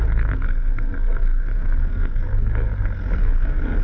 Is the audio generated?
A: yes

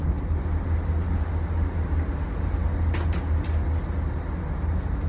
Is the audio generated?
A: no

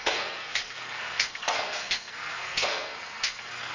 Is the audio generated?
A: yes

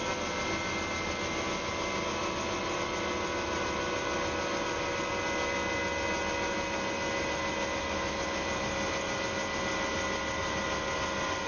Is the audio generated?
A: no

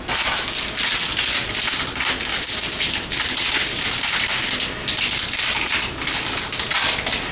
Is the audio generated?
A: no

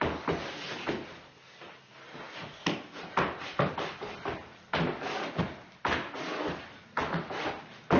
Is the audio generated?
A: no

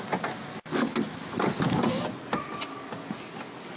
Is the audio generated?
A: no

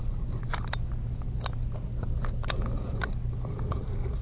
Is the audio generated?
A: no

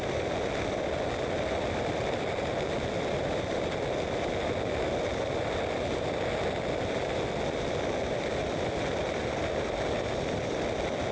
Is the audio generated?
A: no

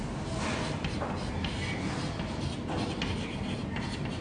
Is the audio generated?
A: no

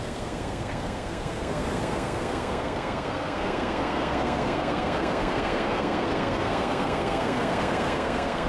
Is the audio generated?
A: yes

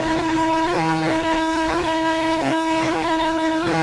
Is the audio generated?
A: yes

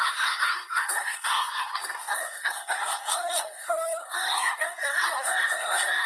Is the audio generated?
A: yes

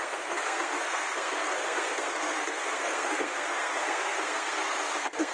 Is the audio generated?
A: yes